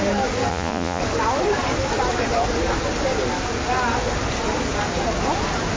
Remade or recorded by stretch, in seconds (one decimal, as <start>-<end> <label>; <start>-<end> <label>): 0.0-0.5 recorded; 0.5-1.0 remade; 1.0-5.8 recorded